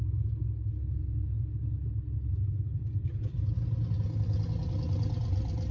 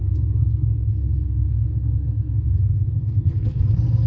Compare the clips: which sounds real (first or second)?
first